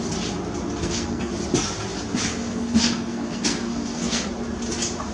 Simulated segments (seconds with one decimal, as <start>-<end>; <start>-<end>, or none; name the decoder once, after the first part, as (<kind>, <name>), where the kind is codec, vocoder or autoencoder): 0.8-1.3 (codec, SNAC); 2.3-4.3